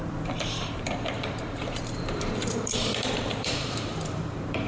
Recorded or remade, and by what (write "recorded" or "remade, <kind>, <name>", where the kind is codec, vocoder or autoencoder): remade, vocoder, BigVGAN v2